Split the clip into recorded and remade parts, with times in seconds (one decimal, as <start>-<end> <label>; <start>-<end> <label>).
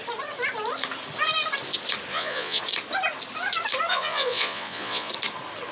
0.0-2.1 recorded; 2.1-2.6 remade; 2.6-3.9 recorded; 3.9-5.1 remade; 5.1-5.7 recorded